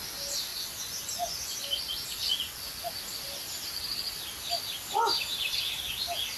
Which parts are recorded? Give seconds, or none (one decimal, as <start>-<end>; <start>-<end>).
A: 0.0-0.5; 2.9-6.4